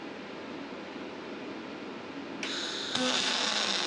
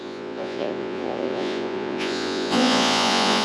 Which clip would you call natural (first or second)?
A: first